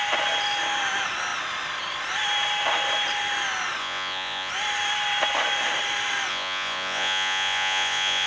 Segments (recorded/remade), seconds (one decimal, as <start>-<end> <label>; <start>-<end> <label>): 0.0-3.8 recorded; 3.8-4.5 remade; 4.5-6.3 recorded; 6.3-8.3 remade